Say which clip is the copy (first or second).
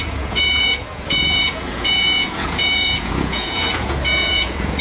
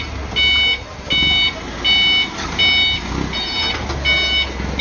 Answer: first